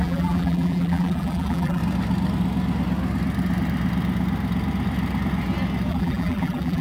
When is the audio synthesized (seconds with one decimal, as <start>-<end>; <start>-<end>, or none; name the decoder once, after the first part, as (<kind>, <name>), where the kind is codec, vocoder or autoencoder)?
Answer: 0.0-1.8 (vocoder, BigVGAN v2); 5.9-6.8

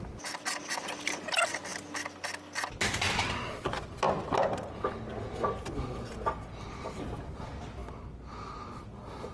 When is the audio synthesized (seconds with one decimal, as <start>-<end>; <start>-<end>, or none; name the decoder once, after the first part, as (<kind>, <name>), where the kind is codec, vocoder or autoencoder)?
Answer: none

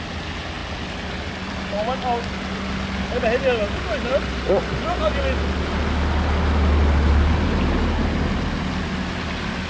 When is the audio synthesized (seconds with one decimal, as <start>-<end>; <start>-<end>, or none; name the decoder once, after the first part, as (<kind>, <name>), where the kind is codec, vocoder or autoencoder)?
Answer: none